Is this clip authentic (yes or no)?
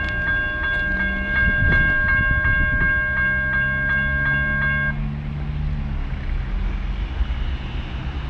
yes